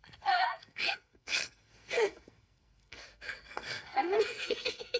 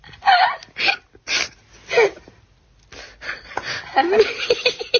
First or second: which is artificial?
first